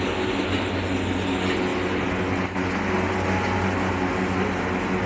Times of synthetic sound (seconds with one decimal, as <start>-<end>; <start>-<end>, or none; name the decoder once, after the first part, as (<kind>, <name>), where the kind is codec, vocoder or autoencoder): none

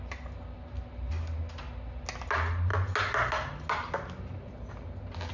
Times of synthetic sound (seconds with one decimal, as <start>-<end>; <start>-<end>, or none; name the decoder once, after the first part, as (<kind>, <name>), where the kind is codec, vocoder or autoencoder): none

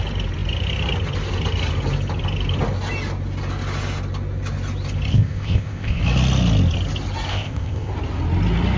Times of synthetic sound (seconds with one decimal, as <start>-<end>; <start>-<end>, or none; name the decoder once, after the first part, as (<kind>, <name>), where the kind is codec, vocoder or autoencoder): 5.1-6.0 (codec, ZipCodec); 7.3-7.9

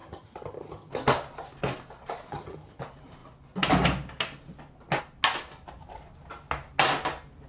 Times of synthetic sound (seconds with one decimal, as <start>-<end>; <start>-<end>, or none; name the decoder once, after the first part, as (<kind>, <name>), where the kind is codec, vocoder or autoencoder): 0.0-0.9 (vocoder, HiFi-GAN); 2.3-2.8